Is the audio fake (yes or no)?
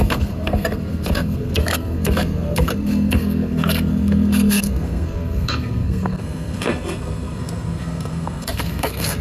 yes